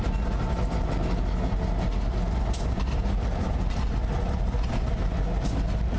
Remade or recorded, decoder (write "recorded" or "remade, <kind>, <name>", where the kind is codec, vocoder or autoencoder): recorded